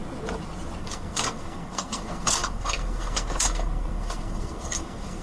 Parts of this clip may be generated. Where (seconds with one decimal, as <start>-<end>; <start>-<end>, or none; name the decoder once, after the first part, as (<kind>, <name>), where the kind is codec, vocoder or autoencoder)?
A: 0.8-5.2 (codec, SNAC)